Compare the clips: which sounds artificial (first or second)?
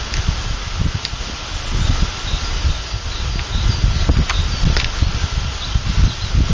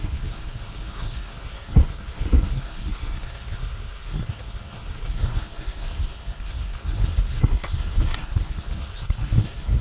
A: second